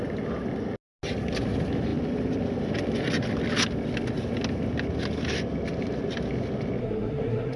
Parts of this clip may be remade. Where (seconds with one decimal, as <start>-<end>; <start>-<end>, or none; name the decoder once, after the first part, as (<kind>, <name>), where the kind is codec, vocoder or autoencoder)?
6.8-7.6 (codec, SNAC)